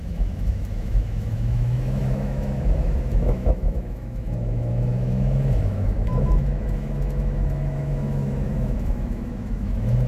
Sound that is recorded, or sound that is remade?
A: remade